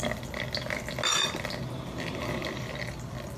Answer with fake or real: real